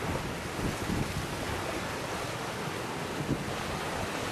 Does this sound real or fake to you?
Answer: real